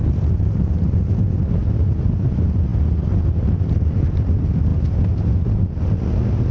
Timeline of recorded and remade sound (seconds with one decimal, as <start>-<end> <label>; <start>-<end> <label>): 0.0-6.5 recorded